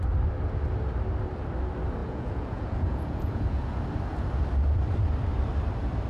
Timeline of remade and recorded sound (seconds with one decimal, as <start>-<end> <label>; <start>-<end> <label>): 0.0-2.0 recorded; 2.0-3.8 remade; 3.8-6.1 recorded